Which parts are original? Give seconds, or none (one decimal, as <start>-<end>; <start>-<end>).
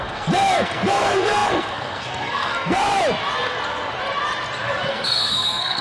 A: 2.8-4.9